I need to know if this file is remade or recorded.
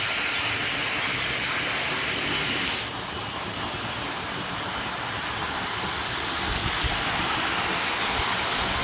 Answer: recorded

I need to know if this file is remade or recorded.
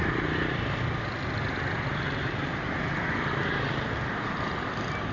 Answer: recorded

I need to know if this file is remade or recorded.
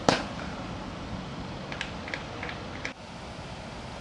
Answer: recorded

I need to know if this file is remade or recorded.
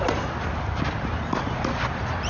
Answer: recorded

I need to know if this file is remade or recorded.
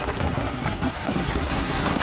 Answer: remade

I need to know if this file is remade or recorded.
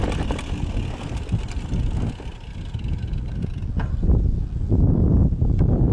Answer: recorded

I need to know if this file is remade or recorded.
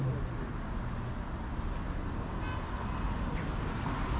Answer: recorded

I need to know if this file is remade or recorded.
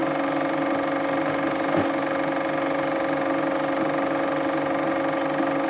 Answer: recorded